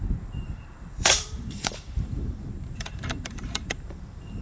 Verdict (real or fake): fake